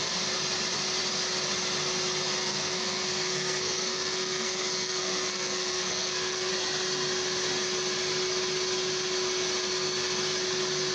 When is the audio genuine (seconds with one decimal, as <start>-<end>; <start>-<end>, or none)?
0.0-2.5; 6.5-10.9